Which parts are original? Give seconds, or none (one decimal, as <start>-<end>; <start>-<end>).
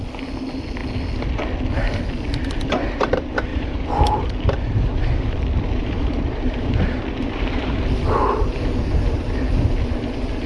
0.0-3.5; 5.0-5.8; 7.9-10.5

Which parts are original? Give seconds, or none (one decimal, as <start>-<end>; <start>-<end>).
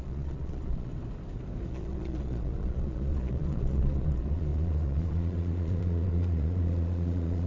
0.9-1.7